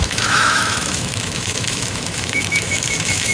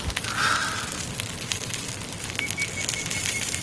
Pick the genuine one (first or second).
second